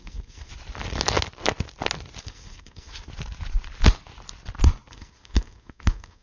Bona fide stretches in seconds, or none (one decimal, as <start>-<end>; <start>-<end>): 0.5-2.2; 3.1-4.9